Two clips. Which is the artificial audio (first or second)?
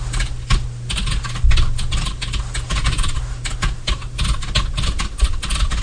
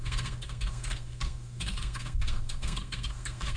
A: second